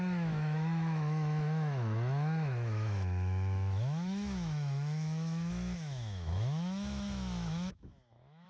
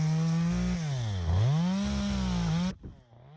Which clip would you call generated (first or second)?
first